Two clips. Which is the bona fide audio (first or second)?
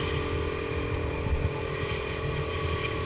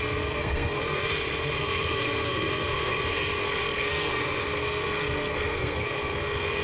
first